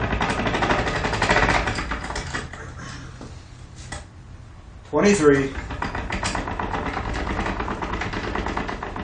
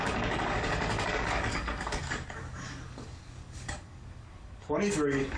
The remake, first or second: second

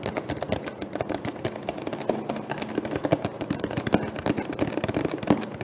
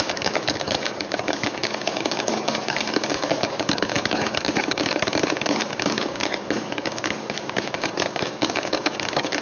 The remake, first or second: second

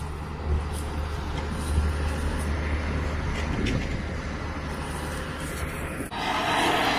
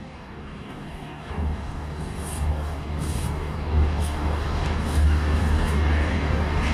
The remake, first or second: second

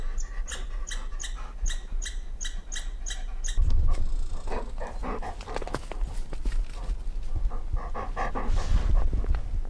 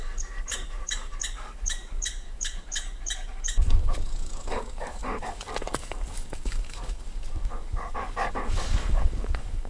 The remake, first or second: second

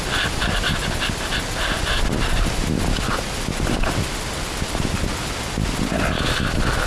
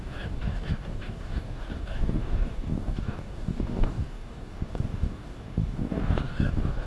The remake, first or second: second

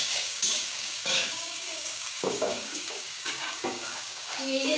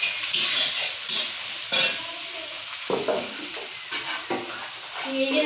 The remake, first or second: first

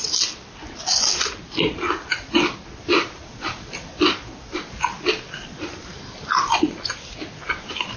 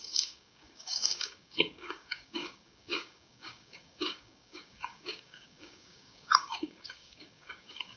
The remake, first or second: second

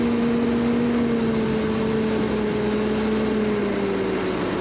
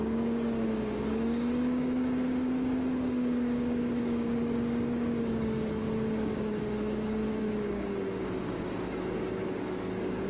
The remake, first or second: second